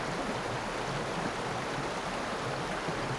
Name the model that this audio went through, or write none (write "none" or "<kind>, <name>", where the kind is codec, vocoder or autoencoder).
none